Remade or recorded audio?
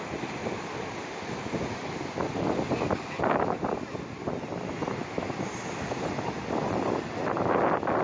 recorded